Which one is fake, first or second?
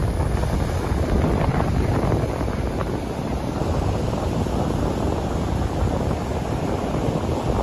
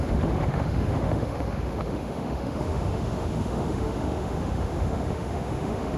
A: second